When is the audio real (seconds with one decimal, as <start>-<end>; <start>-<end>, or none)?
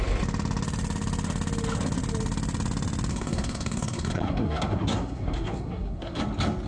0.0-3.1; 6.2-6.7